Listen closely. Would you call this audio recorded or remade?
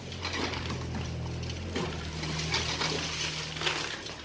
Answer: recorded